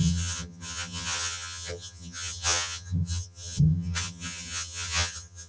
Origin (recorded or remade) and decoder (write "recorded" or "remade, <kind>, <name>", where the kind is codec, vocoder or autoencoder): remade, vocoder, HiFi-GAN